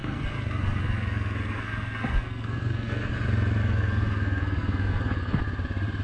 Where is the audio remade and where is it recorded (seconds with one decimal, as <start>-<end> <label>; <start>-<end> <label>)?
0.0-3.1 remade; 3.1-3.6 recorded; 3.6-5.4 remade; 5.4-6.0 recorded